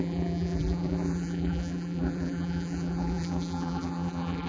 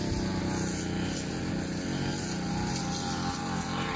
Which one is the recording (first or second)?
second